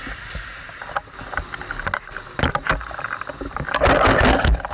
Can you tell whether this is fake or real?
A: real